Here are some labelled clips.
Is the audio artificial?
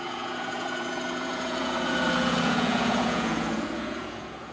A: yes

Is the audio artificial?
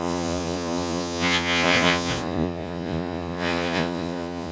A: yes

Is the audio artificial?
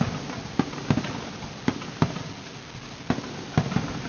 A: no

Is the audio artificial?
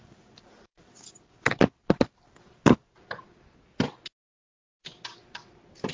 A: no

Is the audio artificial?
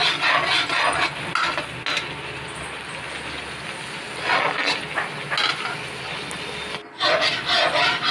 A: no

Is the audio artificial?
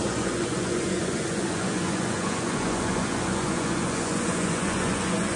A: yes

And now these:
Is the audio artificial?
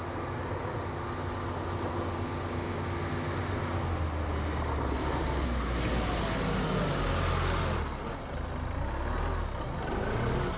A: no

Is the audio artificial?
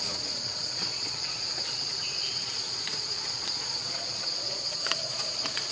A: yes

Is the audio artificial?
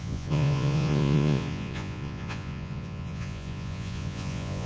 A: yes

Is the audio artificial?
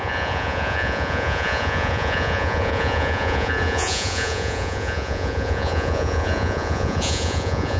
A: yes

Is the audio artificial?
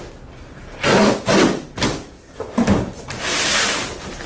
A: no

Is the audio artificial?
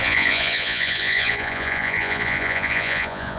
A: yes